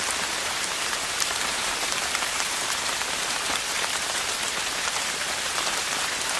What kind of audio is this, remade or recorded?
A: remade